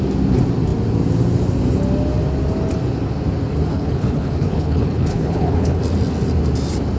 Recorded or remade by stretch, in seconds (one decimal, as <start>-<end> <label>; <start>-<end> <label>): 0.0-3.7 recorded; 3.7-5.8 remade; 5.8-7.0 recorded